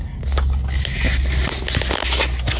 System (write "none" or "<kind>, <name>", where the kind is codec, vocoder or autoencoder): none